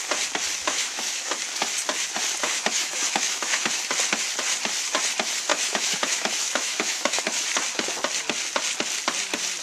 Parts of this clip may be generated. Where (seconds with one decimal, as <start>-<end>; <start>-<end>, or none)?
0.6-1.2; 2.4-3.7; 5.5-7.2